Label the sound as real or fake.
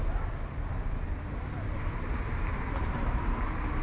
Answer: real